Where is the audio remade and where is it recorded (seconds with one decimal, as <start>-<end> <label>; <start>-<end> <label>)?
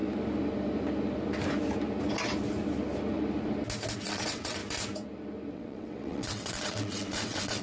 0.0-4.0 recorded; 4.0-4.6 remade; 4.6-5.5 recorded; 5.5-7.6 remade